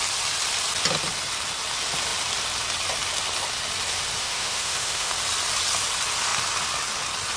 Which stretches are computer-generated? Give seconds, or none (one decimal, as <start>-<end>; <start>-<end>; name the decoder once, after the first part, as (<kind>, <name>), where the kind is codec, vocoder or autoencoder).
4.2-5.1 (autoencoder, DAC-VAE)